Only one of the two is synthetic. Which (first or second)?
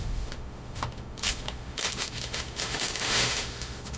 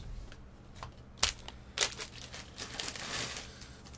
first